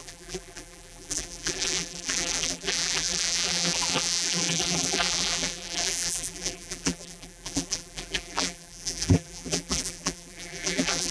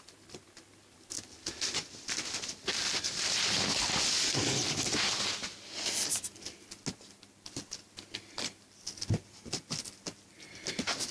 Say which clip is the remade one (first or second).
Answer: first